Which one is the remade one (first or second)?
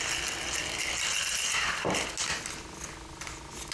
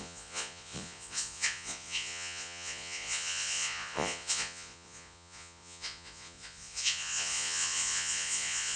second